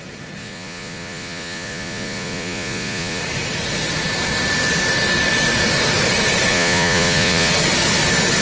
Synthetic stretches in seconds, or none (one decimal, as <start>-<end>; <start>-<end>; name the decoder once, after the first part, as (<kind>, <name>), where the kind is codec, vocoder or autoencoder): 0.4-3.2 (vocoder, Vocos); 6.5-7.5